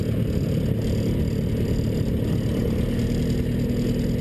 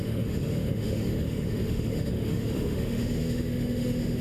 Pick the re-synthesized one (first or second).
second